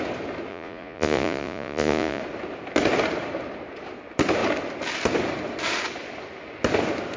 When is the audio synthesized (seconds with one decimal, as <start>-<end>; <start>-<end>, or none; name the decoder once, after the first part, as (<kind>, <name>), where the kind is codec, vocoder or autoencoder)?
0.5-2.2 (vocoder, Vocos)